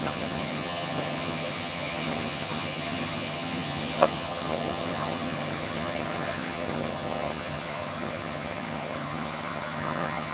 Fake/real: fake